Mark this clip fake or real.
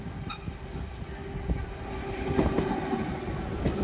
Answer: real